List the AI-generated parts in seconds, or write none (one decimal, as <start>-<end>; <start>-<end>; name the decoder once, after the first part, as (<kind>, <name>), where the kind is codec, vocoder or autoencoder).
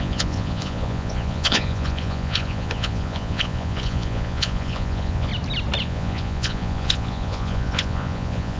0.0-5.3 (vocoder, Vocos); 5.8-8.6